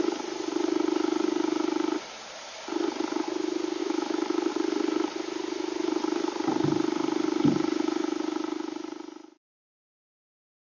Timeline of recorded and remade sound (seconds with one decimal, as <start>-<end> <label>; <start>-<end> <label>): 0.0-3.8 recorded; 3.8-4.5 remade; 4.5-10.7 recorded